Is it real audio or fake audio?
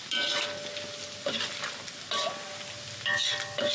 real